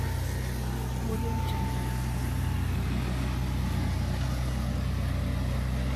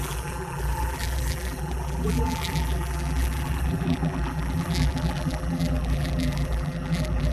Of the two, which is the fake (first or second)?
second